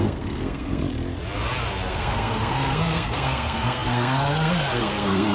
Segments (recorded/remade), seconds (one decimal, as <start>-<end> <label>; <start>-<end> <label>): 0.0-0.8 remade; 0.8-1.9 recorded; 1.9-5.3 remade